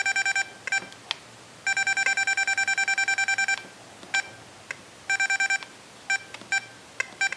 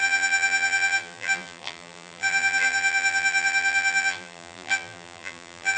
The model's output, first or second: second